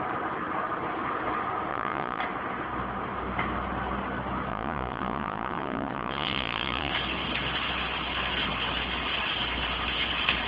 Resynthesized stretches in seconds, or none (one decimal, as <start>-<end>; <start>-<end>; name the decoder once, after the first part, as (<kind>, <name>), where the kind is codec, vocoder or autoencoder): 1.7-2.2 (vocoder, Vocos); 4.5-6.9